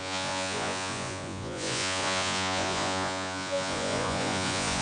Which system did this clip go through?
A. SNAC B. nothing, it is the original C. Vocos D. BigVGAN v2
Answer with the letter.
C